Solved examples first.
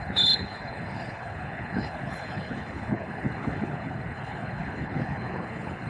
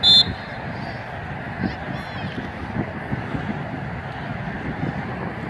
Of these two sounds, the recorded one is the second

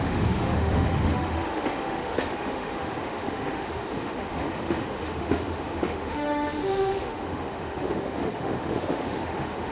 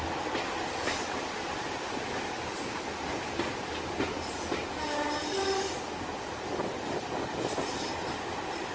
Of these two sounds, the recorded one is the second